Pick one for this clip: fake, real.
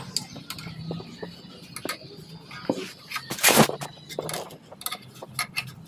real